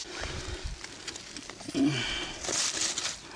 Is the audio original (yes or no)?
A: yes